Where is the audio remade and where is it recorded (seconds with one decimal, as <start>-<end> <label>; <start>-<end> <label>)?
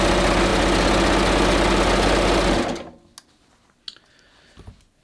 0.0-5.0 recorded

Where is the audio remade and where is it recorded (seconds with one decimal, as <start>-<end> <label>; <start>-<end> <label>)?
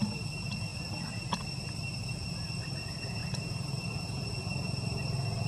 0.0-3.2 recorded; 3.2-4.3 remade; 4.3-5.5 recorded